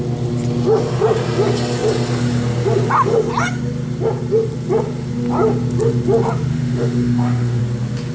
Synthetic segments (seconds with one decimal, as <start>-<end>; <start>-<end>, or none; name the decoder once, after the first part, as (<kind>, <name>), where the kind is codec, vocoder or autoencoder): 6.5-7.6 (autoencoder, DAC-VAE)